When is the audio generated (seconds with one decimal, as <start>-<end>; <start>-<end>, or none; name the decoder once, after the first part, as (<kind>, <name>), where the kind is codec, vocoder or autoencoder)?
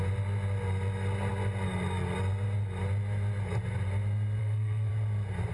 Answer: 4.4-4.9 (codec, SNAC)